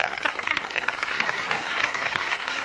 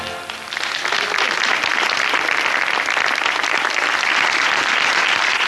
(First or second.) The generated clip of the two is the first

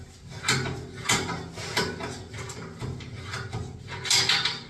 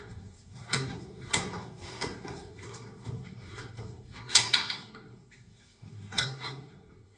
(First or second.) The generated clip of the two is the second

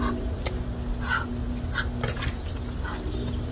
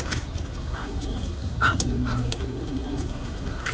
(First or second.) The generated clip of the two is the second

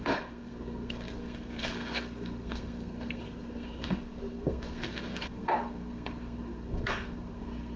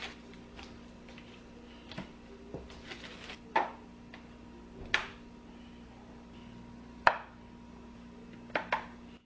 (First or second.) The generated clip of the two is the first